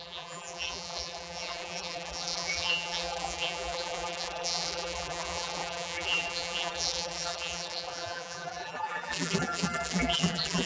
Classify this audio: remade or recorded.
remade